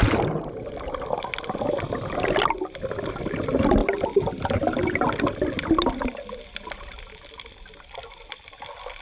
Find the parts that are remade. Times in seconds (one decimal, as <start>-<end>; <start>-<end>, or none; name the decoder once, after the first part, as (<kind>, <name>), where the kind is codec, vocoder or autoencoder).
none